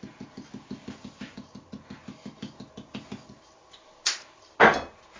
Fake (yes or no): no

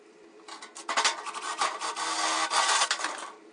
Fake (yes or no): no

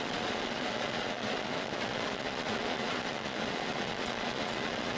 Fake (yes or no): yes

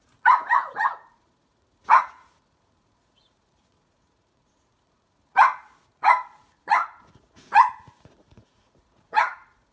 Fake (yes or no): yes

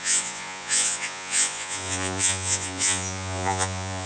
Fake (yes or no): yes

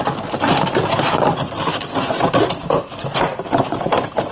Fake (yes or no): no